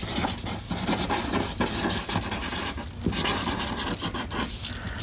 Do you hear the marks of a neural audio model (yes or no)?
no